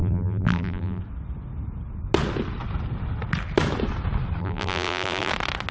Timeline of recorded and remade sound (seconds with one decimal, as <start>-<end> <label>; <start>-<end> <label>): 0.0-1.0 remade; 1.0-4.4 recorded; 4.4-5.3 remade; 5.3-5.7 recorded